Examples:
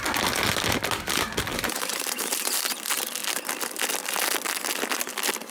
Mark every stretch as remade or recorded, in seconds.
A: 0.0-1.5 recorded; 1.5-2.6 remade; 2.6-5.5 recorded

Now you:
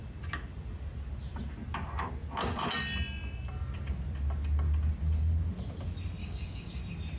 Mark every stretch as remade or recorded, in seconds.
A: 0.0-6.2 recorded; 6.2-6.8 remade; 6.8-7.2 recorded

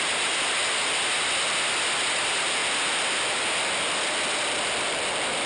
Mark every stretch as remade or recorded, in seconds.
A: 0.0-0.6 remade; 0.6-2.1 recorded; 2.1-2.6 remade; 2.6-4.6 recorded; 4.6-5.5 remade

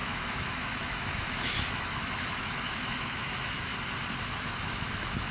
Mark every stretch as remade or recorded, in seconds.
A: 0.0-3.7 remade; 3.7-4.3 recorded; 4.3-5.3 remade

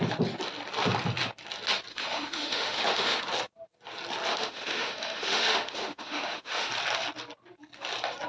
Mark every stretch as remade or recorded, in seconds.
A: 0.0-1.9 recorded; 1.9-3.2 remade; 3.2-4.3 recorded; 4.3-6.7 remade; 6.7-8.3 recorded

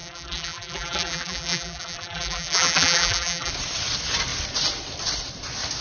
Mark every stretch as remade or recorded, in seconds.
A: 0.0-3.5 remade; 3.5-5.8 recorded

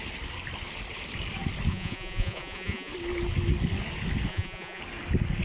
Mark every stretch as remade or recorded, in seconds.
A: 0.0-1.7 recorded; 1.7-2.9 remade; 2.9-4.3 recorded; 4.3-4.8 remade; 4.8-5.4 recorded